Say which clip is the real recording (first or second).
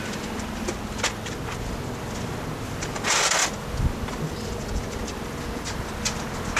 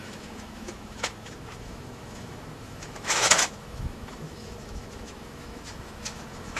first